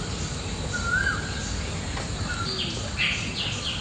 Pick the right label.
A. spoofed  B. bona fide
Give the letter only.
B